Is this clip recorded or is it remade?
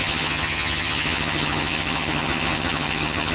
remade